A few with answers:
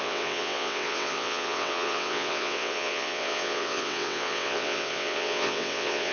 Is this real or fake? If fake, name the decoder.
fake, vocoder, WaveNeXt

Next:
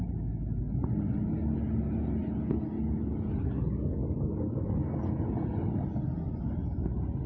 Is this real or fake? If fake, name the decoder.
real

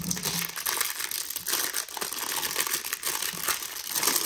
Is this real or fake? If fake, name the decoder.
real